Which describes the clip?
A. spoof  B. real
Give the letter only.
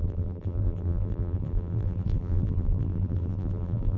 A